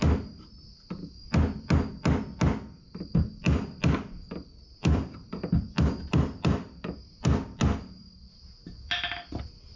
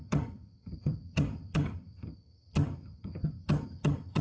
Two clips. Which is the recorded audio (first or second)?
first